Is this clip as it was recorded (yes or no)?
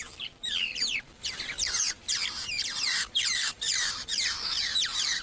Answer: no